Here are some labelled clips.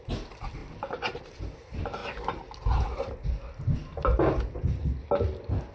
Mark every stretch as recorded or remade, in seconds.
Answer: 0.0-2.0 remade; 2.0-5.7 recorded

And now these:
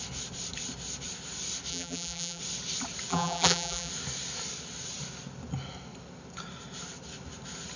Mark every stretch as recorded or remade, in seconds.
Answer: 0.0-1.7 recorded; 1.7-2.4 remade; 2.4-3.1 recorded; 3.1-3.9 remade; 3.9-7.8 recorded

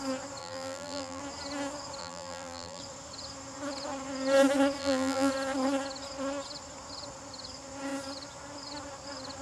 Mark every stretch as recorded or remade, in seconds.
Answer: 0.0-0.4 recorded; 0.4-1.2 remade; 1.2-2.0 recorded; 2.0-2.8 remade; 2.8-4.8 recorded; 4.8-5.3 remade; 5.3-9.4 recorded

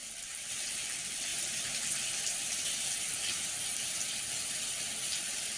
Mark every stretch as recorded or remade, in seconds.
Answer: 0.0-0.5 remade; 0.5-1.3 recorded; 1.3-4.7 remade; 4.7-5.6 recorded

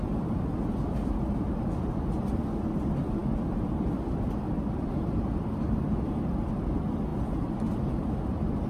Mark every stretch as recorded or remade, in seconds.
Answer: 0.0-8.7 recorded